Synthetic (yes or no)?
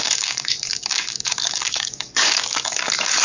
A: yes